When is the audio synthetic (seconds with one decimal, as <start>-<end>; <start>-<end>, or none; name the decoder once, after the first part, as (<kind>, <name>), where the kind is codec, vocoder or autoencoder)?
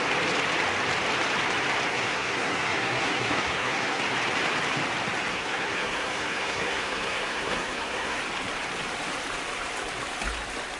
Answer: 1.9-4.0 (codec, SNAC); 5.3-8.2